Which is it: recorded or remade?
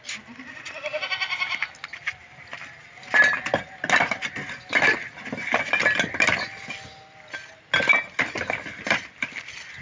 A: recorded